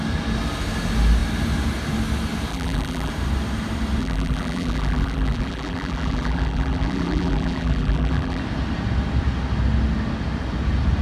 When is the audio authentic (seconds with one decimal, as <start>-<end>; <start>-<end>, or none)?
0.0-2.5; 3.1-4.0; 8.4-11.0

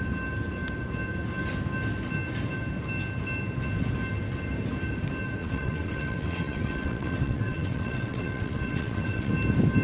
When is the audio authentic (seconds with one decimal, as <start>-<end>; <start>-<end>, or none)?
0.0-5.4; 9.3-9.8

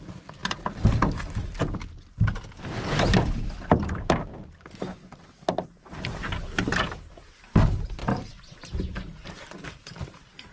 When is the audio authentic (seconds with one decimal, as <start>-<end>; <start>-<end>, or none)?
0.0-10.5

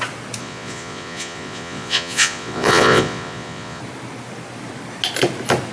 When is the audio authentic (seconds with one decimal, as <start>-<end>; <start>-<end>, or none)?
0.0-0.4; 3.8-5.7

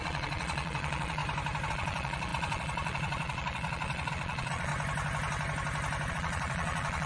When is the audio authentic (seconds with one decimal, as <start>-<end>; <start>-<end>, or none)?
1.2-1.7; 4.7-6.1

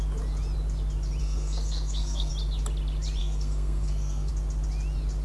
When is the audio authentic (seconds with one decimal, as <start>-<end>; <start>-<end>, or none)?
0.0-1.2; 2.3-3.2; 4.3-5.2